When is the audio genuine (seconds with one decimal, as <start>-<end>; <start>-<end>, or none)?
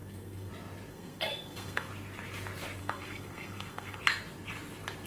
0.5-0.9; 1.9-2.8; 4.0-5.1